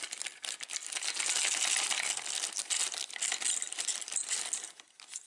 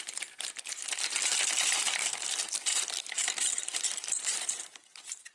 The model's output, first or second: second